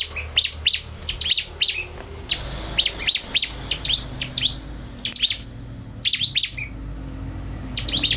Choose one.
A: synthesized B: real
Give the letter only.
B